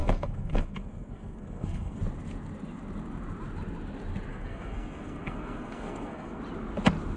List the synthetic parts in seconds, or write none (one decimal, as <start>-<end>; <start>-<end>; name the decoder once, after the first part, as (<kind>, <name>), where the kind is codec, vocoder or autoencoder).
0.0-2.0 (codec, SNAC); 4.3-6.4